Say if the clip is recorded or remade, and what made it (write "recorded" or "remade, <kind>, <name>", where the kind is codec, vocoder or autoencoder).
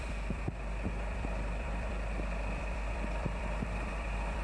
remade, vocoder, BigVGAN v2